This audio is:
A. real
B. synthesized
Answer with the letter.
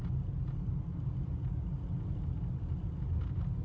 A